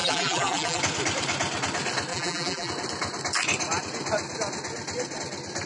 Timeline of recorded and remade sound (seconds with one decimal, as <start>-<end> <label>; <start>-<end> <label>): 0.0-0.8 remade; 0.8-2.1 recorded; 2.1-2.7 remade; 2.7-5.7 recorded

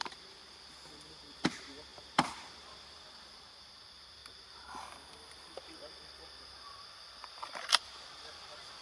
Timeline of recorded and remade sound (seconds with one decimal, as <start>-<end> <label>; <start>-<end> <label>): 0.0-0.4 remade; 0.4-1.2 recorded; 1.2-4.2 remade; 4.2-7.3 recorded; 7.3-8.8 remade

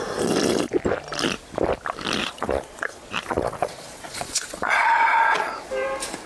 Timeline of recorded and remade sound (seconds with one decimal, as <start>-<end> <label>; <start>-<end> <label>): 0.0-2.2 recorded; 2.2-5.5 remade; 5.5-6.3 recorded

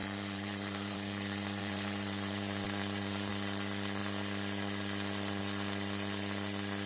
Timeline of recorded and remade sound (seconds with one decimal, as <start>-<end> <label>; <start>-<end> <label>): 0.0-3.3 remade; 3.3-6.9 recorded